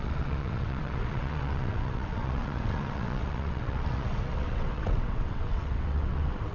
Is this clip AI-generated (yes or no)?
yes